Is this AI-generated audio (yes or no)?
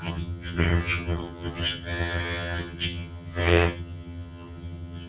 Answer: yes